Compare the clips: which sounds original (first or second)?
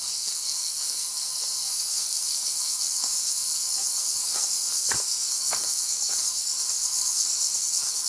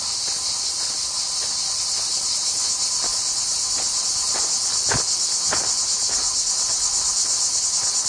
second